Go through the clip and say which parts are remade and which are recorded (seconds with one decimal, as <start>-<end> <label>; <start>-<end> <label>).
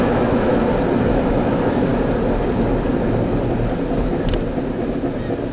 0.0-0.5 remade; 0.5-1.1 recorded; 1.1-1.9 remade; 1.9-5.5 recorded